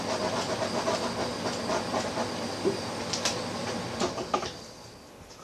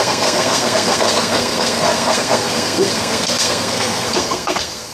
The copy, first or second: second